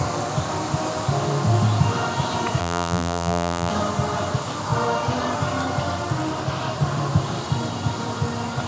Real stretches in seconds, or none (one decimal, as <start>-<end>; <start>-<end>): 0.0-2.6; 3.7-8.7